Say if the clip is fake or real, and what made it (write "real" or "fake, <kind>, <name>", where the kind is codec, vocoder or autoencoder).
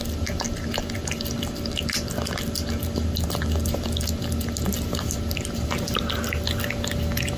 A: real